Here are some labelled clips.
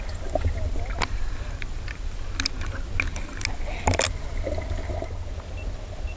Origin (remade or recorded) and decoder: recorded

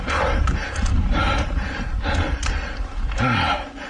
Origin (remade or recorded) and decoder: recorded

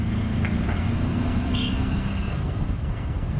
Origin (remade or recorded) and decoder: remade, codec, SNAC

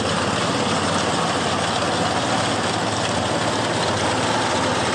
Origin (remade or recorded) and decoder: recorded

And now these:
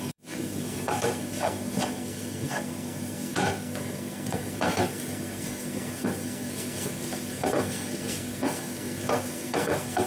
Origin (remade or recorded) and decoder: remade, codec, SNAC